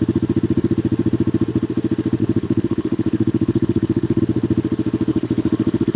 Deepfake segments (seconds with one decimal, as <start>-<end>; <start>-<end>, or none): 2.2-4.2; 5.1-6.0